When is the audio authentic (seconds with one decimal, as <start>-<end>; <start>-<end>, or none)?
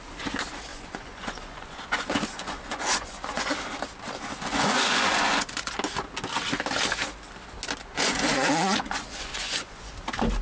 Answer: 0.0-0.7; 3.5-4.5; 5.7-7.9; 9.9-10.4